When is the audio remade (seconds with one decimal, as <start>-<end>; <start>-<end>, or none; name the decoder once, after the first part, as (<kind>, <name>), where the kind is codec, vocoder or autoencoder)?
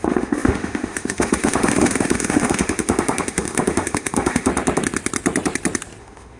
0.0-4.5 (autoencoder, DAC-VAE); 6.0-6.4